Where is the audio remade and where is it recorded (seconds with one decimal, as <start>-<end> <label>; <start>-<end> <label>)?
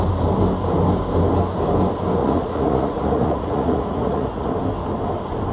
0.0-2.2 recorded; 2.2-4.5 remade; 4.5-5.5 recorded